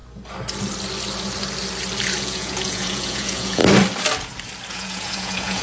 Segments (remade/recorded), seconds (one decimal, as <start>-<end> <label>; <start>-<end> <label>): 0.0-2.2 recorded; 2.2-3.6 remade; 3.6-4.7 recorded; 4.7-5.6 remade